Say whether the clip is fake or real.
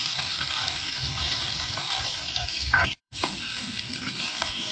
fake